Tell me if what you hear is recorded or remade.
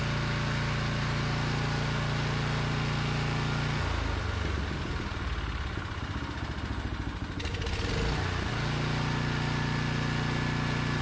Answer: recorded